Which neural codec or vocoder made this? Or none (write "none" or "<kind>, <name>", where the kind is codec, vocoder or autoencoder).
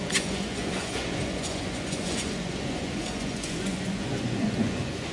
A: vocoder, Vocos